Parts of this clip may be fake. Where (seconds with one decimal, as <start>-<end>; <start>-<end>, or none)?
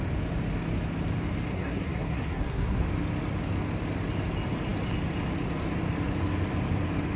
1.5-2.8